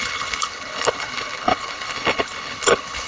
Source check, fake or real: fake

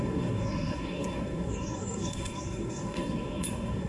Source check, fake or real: fake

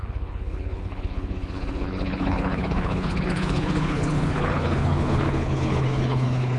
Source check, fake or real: fake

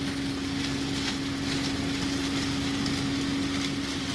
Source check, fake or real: real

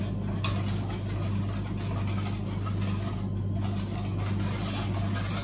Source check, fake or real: real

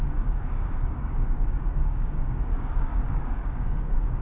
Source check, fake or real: fake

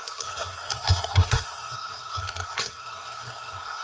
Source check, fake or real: fake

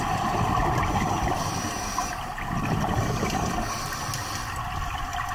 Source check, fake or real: real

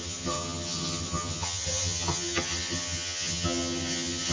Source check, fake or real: fake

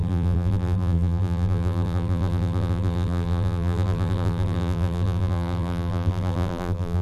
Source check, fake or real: fake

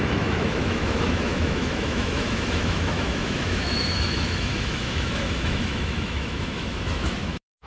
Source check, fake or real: fake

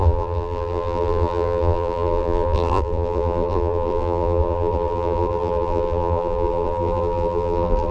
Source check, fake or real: fake